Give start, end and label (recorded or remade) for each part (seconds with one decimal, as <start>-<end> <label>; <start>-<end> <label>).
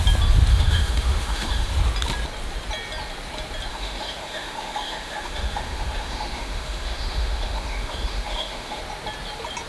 0.0-0.5 recorded; 0.5-1.7 remade; 1.7-3.7 recorded; 3.7-8.8 remade; 8.8-9.7 recorded